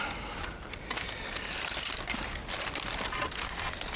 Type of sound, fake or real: real